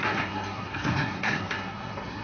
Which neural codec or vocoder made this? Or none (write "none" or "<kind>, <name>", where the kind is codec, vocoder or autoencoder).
codec, SNAC